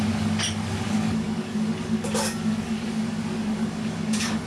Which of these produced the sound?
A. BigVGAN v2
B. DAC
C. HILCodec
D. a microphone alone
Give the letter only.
B